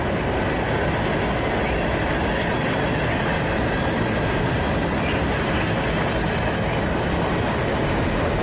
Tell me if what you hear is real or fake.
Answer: real